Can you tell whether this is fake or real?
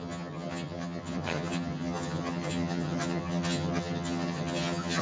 fake